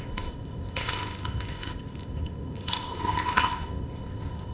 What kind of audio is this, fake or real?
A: fake